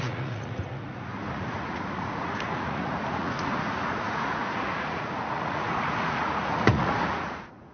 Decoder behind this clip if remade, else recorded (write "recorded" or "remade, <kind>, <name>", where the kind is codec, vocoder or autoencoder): remade, vocoder, Vocos